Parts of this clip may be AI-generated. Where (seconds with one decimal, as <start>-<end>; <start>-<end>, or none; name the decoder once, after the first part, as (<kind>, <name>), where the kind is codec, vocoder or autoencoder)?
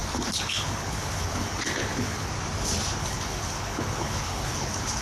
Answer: 0.0-2.3 (codec, HILCodec); 3.0-5.0